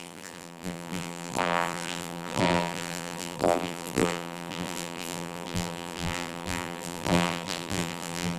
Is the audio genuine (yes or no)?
no